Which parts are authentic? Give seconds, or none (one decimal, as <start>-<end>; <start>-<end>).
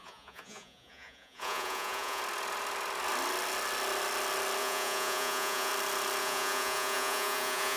2.2-4.6; 5.7-6.2